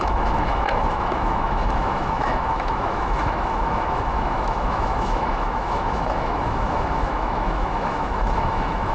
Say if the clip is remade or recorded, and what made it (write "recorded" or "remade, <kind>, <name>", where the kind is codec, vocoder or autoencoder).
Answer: remade, autoencoder, DAC-VAE